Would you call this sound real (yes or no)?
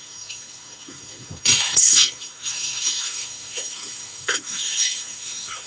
no